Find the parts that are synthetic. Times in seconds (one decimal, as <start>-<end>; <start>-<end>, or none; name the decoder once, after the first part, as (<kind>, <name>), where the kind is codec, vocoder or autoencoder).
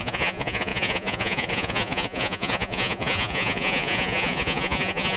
0.0-5.2 (vocoder, Vocos)